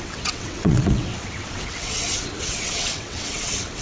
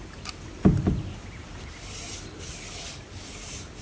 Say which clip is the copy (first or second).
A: first